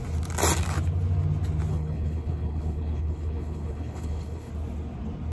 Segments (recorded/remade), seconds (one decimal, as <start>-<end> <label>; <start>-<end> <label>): 0.0-1.7 recorded; 1.7-4.5 remade; 4.5-5.3 recorded